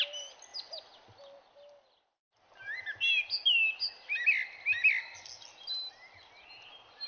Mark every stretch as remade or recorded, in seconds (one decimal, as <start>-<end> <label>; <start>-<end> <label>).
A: 0.0-7.1 recorded